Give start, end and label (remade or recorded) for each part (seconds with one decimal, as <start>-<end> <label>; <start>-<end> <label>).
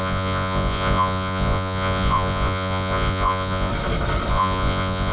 0.0-3.7 remade; 3.7-4.3 recorded; 4.3-5.1 remade